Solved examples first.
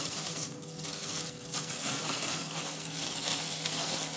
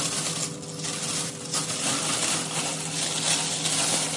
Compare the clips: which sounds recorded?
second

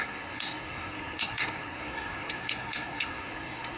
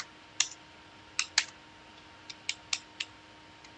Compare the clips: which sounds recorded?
second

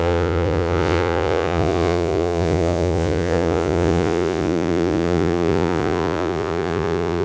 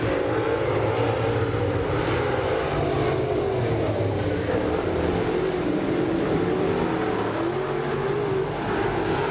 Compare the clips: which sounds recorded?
second